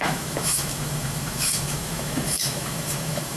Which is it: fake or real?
fake